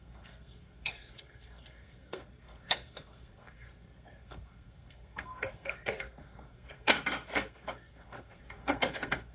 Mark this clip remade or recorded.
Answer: remade